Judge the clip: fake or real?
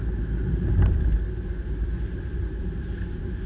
real